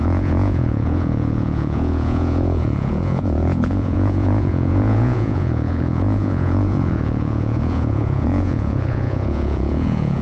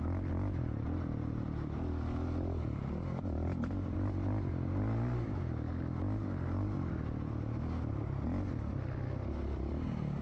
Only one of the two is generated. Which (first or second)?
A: first